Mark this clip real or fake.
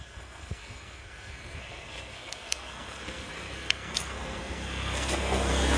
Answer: fake